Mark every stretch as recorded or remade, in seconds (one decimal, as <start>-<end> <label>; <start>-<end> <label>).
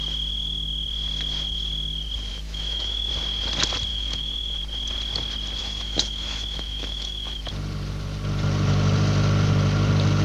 0.0-2.3 recorded; 2.3-3.1 remade; 3.1-3.9 recorded; 3.9-4.6 remade; 4.6-5.6 recorded; 5.6-7.5 remade; 7.5-10.2 recorded